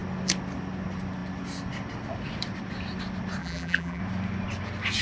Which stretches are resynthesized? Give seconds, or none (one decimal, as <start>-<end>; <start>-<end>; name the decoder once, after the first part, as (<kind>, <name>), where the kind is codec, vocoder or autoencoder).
3.4-4.0 (vocoder, BigVGAN v2)

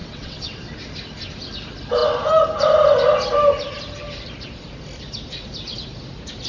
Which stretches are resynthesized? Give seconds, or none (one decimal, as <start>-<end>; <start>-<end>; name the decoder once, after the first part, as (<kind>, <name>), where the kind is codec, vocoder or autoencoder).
0.0-0.6 (vocoder, WaveNeXt)

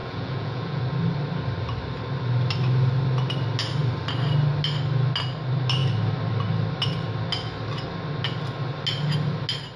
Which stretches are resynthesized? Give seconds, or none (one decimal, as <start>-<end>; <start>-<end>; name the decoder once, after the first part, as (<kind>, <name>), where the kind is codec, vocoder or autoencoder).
0.0-0.8 (vocoder, Vocos)

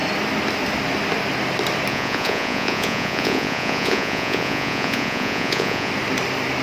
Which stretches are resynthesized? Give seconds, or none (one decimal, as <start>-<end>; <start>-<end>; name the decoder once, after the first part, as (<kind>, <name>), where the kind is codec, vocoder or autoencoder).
1.9-5.9 (vocoder, Vocos)

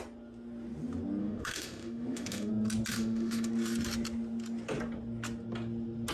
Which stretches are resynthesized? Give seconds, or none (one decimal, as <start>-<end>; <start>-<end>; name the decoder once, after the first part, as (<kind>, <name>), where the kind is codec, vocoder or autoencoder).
1.2-2.5 (autoencoder, DAC-VAE); 2.9-3.5